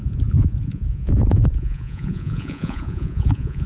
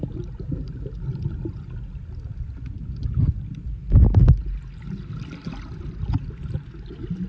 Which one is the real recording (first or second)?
second